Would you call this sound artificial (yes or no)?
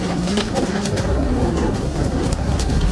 yes